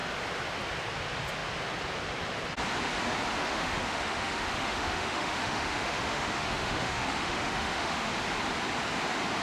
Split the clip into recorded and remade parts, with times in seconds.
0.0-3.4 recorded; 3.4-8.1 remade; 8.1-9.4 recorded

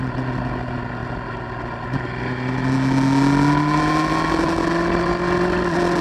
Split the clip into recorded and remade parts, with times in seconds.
0.0-6.0 recorded

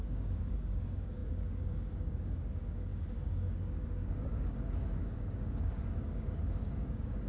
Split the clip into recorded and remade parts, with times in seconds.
0.0-7.3 remade

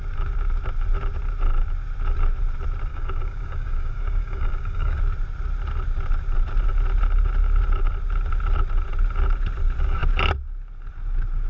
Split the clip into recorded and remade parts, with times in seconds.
0.0-2.9 recorded; 2.9-5.0 remade; 5.0-11.5 recorded

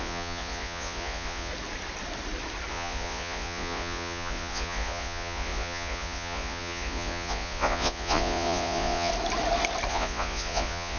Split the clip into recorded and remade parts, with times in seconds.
0.0-1.5 remade; 1.5-2.7 recorded; 2.7-9.1 remade; 9.1-9.9 recorded; 9.9-11.0 remade

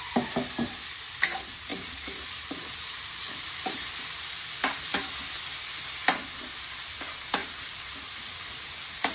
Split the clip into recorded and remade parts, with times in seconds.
0.0-1.7 recorded; 1.7-3.9 remade; 3.9-7.4 recorded; 7.4-8.3 remade; 8.3-9.1 recorded